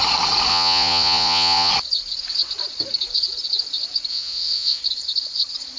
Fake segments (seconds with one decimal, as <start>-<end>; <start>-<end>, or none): 0.5-1.7; 4.1-4.8